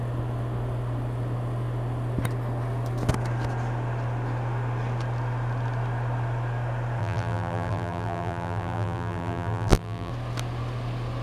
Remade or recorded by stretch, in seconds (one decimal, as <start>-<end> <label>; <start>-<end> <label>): 0.0-7.0 recorded; 7.0-10.1 remade; 10.1-11.2 recorded